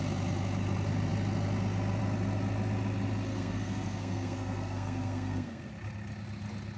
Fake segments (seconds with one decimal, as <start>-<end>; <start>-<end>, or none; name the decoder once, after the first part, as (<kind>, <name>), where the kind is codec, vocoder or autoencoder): 3.3-5.7 (codec, SNAC)

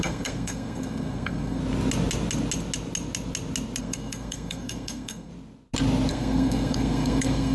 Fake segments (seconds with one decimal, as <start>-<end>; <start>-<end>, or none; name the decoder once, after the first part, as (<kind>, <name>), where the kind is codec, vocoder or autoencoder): 0.0-1.6 (codec, SNAC); 3.8-5.3; 6.1-7.5

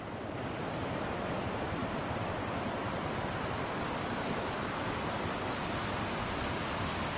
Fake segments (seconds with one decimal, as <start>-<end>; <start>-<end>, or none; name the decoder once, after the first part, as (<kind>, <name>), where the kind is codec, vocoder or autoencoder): none

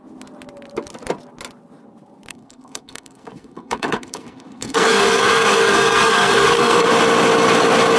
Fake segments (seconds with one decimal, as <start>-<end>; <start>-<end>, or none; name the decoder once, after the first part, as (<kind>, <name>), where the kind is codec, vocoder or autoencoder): 2.3-6.9 (codec, SNAC)

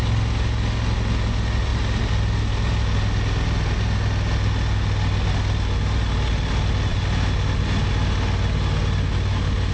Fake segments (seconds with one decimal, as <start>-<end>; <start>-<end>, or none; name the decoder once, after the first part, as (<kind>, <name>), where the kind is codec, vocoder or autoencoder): none

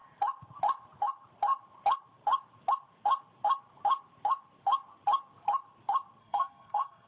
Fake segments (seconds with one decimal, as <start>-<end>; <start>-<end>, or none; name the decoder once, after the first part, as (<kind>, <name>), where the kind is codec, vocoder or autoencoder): 6.2-7.1 (codec, SNAC)

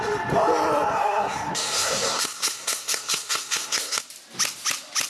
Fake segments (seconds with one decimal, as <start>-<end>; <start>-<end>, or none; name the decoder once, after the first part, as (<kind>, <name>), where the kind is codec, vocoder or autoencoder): 0.9-4.0 (codec, SNAC)

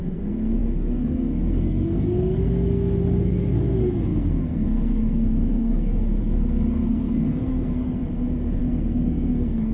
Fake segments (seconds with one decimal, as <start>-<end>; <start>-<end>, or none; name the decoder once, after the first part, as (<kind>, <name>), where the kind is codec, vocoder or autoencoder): 0.0-9.7 (codec, SNAC)